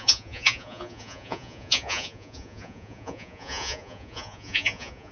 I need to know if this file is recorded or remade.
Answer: remade